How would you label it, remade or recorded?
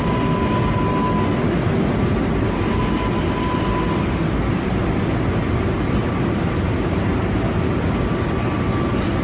recorded